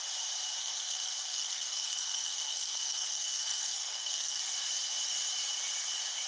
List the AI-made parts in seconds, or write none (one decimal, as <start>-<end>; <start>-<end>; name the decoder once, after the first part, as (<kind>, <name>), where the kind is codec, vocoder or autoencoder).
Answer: 0.6-4.4 (codec, SNAC)